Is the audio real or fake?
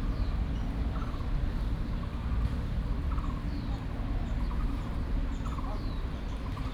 real